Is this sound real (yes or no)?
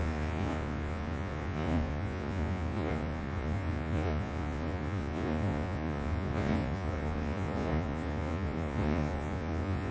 no